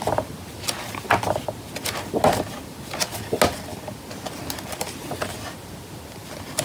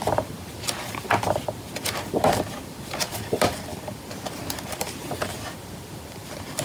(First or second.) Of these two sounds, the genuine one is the first